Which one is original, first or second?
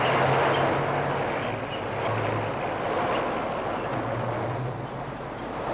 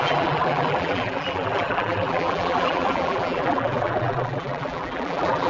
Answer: first